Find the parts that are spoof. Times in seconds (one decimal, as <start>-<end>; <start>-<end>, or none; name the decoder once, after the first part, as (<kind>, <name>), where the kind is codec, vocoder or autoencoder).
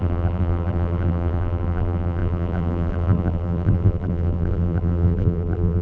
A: 0.0-5.8 (vocoder, BigVGAN v2)